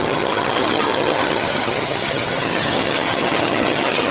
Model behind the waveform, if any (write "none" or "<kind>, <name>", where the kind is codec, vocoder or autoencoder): vocoder, HiFi-GAN